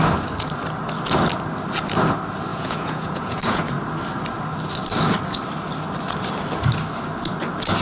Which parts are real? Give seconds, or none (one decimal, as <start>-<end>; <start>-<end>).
0.0-2.5; 3.6-7.8